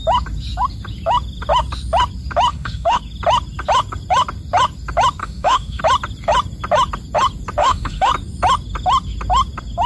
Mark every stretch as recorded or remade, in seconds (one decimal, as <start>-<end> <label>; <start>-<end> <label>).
0.0-2.5 recorded; 2.5-3.0 remade; 3.0-5.2 recorded; 5.2-5.8 remade; 5.8-7.6 recorded; 7.6-8.1 remade; 8.1-9.9 recorded